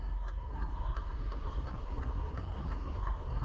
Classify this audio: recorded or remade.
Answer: remade